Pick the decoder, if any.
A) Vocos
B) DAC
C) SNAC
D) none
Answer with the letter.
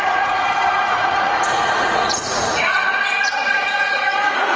A